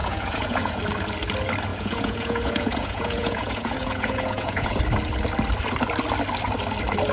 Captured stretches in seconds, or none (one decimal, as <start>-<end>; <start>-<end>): 0.8-1.7; 4.8-7.1